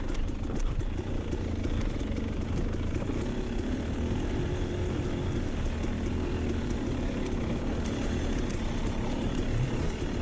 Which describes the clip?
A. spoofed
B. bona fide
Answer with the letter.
B